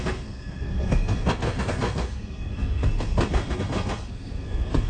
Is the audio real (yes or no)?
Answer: no